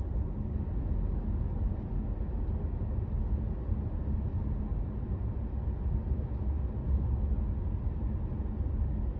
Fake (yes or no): no